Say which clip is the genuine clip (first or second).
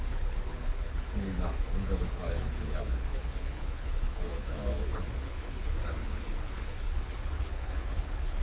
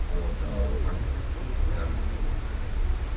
second